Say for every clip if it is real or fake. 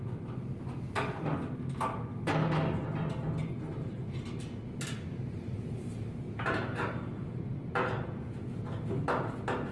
real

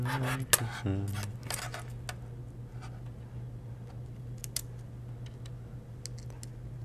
real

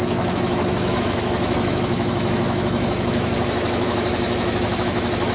fake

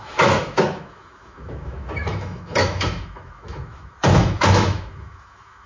fake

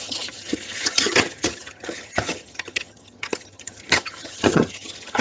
fake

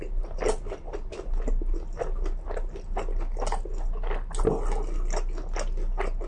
real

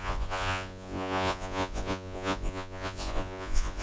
fake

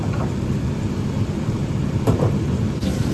fake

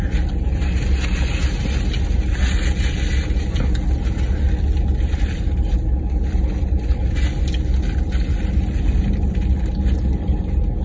real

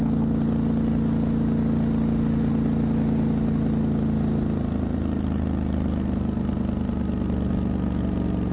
real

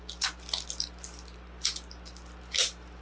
real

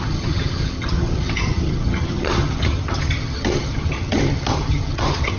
fake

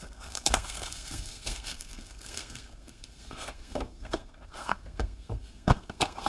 fake